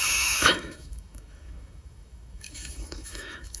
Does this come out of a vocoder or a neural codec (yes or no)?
yes